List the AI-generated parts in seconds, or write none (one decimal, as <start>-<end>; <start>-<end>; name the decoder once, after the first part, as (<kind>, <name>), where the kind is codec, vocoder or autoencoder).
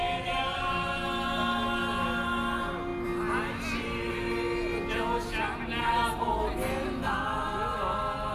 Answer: none